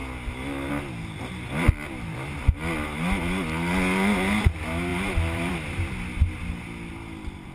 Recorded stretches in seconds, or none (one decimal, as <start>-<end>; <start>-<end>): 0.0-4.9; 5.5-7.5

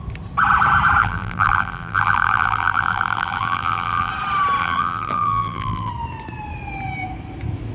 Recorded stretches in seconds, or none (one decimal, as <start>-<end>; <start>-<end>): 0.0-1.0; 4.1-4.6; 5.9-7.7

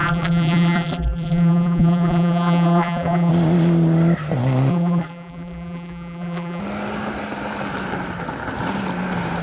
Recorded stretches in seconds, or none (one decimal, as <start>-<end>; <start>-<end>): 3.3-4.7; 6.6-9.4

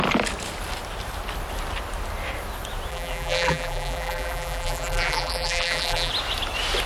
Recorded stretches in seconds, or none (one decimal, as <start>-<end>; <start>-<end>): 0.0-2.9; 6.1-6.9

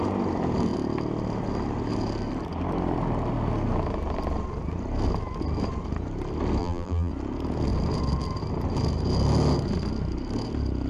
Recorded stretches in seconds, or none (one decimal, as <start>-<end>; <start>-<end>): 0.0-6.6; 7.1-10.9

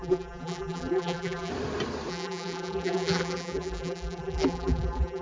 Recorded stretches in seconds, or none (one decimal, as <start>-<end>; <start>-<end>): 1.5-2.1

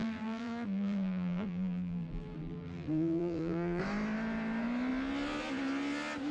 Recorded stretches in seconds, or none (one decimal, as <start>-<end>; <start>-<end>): 3.8-6.3